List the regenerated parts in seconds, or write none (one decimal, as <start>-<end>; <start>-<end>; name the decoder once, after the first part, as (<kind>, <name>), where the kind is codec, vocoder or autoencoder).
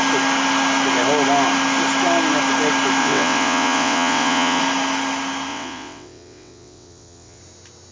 3.0-4.6 (vocoder, WaveNeXt); 5.5-7.4